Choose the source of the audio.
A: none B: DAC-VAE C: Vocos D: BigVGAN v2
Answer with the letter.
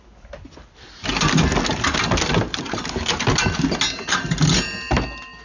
A